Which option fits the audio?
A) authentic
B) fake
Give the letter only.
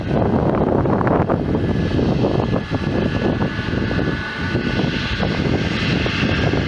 A